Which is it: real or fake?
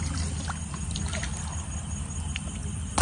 real